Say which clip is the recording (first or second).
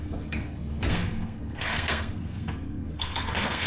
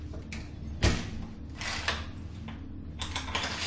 second